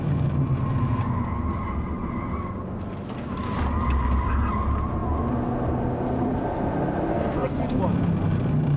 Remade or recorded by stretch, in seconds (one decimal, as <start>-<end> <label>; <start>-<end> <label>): 0.0-7.1 recorded; 7.1-7.8 remade; 7.8-8.8 recorded